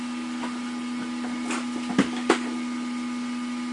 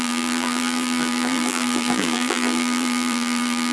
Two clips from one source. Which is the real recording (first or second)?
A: first